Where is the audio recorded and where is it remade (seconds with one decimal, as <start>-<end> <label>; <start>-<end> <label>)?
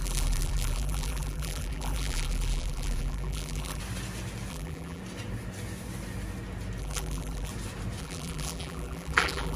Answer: 0.0-3.8 remade; 3.8-4.5 recorded; 4.5-5.0 remade; 5.0-6.8 recorded; 6.8-7.5 remade; 7.5-8.0 recorded; 8.0-9.6 remade